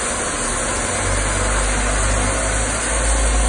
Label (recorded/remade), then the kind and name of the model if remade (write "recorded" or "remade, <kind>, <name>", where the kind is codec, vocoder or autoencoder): recorded